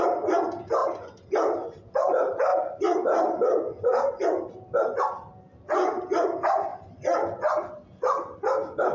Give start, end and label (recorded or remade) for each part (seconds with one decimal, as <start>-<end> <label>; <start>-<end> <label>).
0.0-6.7 recorded; 6.7-7.3 remade; 7.3-8.9 recorded